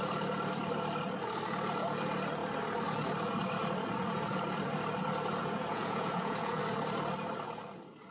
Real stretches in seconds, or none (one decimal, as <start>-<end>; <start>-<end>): 0.0-5.4; 6.6-8.1